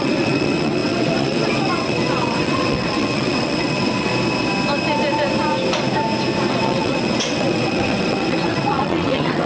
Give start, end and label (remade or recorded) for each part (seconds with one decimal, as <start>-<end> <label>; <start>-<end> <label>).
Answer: 0.0-4.1 remade; 4.1-6.5 recorded; 6.5-9.5 remade